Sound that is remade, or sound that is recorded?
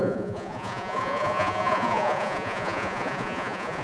remade